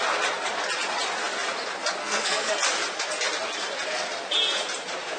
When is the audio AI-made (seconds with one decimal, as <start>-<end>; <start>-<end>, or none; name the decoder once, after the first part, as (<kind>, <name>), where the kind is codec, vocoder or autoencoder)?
2.0-2.5 (codec, SNAC)